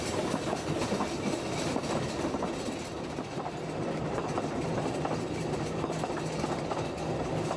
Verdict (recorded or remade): recorded